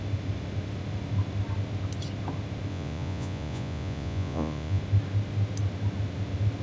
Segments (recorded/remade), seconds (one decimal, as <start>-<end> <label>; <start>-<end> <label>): 0.0-2.7 recorded; 2.7-4.8 remade; 4.8-6.6 recorded